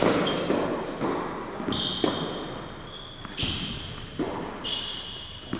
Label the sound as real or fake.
real